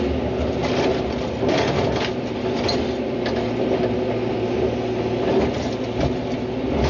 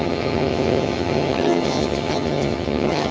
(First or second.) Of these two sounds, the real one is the first